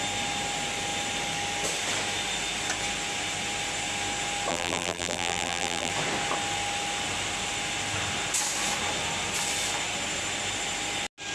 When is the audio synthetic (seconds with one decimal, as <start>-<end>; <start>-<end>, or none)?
4.5-5.9